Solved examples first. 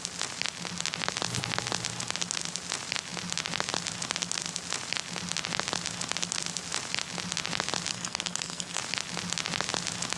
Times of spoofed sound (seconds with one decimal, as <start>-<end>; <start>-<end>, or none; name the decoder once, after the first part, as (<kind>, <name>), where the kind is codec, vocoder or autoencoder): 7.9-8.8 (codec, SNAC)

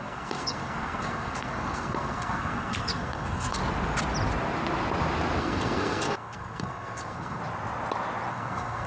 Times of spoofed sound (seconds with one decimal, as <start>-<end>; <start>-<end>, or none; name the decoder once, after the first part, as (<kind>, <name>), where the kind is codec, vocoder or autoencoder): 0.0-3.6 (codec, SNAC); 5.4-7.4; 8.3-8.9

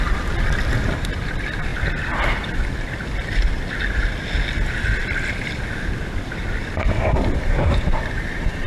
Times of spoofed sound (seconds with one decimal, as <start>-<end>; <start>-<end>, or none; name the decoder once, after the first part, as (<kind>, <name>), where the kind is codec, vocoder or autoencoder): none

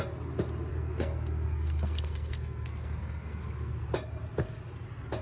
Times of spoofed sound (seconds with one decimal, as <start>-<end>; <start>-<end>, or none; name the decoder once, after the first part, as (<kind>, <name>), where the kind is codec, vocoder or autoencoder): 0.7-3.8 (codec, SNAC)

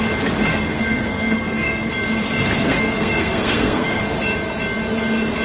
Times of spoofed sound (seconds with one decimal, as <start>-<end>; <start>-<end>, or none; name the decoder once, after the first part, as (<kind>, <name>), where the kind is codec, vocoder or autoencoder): 0.5-1.9 (codec, SNAC); 2.7-4.0

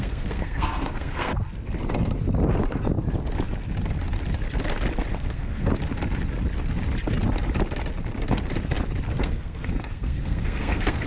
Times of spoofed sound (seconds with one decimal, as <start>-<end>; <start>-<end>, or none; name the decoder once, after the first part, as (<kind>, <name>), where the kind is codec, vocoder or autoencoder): 0.0-1.3 (codec, SNAC); 5.1-5.7; 9.2-11.1